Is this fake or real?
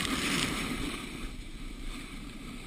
fake